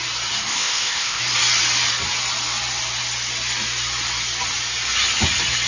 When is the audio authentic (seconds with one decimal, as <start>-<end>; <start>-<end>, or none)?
0.0-0.5; 1.2-5.7